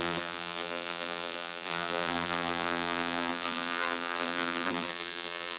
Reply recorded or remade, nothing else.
remade